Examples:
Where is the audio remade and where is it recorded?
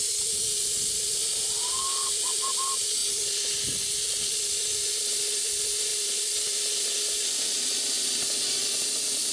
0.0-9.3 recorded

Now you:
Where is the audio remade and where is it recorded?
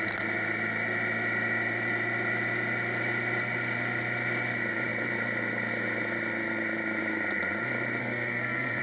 0.0-8.0 recorded; 8.0-8.8 remade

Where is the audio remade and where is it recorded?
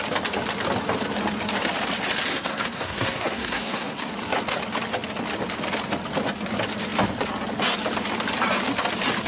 0.0-2.3 recorded; 2.3-4.1 remade; 4.1-9.3 recorded